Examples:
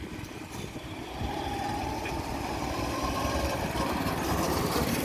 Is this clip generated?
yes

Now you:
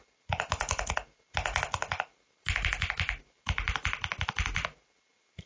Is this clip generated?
no